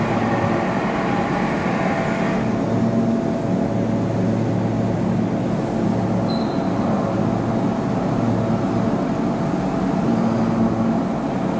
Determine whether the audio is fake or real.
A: real